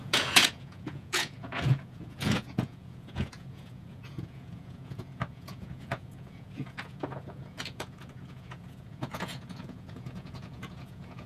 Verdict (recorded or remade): remade